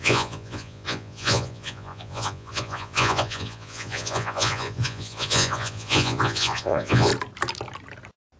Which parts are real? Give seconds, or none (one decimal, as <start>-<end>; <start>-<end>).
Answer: 7.1-8.4